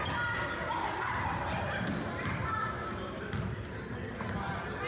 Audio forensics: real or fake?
real